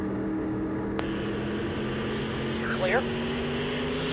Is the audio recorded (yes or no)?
yes